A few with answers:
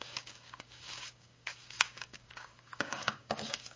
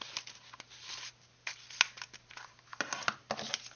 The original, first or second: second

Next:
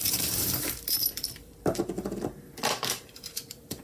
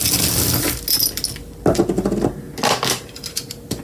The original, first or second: second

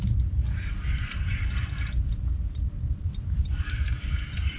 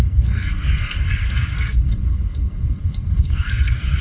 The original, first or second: first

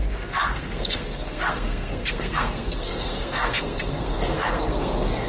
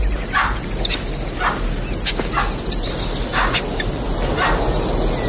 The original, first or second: second